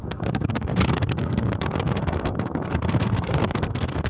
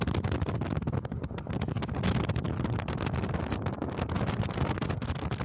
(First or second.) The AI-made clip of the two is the first